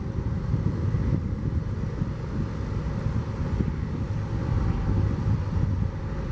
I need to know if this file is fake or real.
real